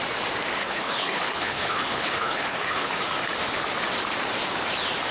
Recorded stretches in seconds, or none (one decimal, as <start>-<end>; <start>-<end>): 0.0-0.6; 2.9-5.1